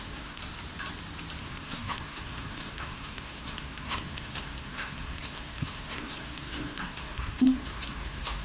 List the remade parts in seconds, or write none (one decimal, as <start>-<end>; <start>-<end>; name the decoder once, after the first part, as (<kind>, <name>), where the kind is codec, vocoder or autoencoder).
0.0-0.4 (codec, SNAC); 1.4-8.4